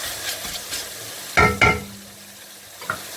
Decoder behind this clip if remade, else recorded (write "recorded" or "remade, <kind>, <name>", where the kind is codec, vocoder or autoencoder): recorded